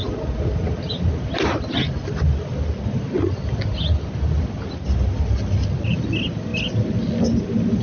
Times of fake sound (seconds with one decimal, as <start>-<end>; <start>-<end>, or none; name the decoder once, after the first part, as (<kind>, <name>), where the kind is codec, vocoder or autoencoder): none